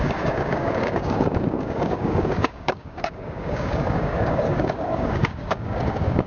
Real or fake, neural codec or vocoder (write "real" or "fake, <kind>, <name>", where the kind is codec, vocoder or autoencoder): fake, codec, DAC